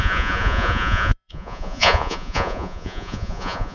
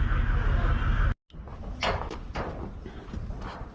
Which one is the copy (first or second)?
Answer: first